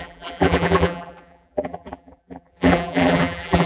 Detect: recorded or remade remade